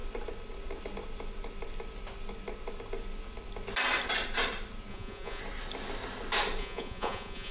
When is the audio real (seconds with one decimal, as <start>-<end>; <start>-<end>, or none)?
0.0-4.9; 5.4-6.6